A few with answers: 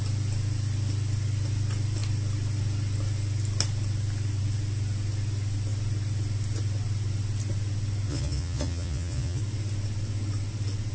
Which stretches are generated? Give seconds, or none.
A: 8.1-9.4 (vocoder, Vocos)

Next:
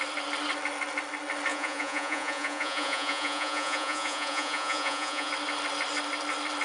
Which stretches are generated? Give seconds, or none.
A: 1.5-5.3 (vocoder, Vocos)